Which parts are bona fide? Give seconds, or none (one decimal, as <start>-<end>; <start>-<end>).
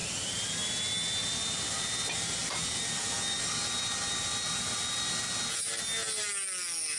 0.5-2.4; 3.0-4.3; 5.8-7.0